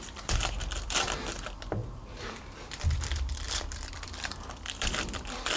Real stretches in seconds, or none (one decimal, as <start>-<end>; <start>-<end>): none